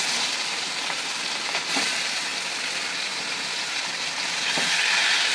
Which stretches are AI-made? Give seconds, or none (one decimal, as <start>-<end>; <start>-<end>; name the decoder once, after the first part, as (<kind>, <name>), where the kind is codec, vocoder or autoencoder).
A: 0.0-2.3 (vocoder, BigVGAN v2); 2.9-5.3